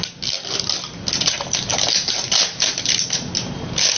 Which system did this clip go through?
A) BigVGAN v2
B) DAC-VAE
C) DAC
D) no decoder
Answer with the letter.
D